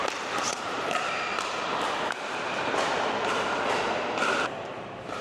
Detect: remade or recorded remade